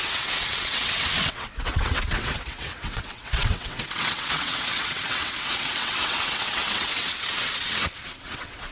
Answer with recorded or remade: remade